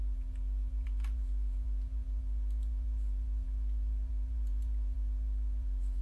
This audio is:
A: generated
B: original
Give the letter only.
A